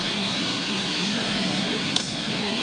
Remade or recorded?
remade